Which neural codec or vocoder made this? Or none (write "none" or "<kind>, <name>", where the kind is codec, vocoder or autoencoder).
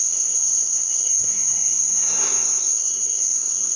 codec, SNAC